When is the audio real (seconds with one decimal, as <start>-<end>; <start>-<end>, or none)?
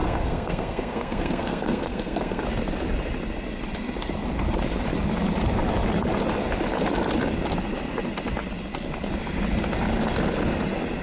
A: 2.4-11.0